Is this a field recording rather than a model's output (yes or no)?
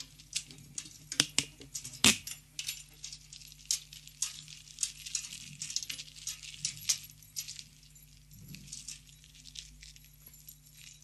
yes